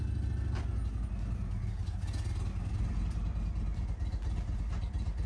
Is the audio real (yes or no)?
yes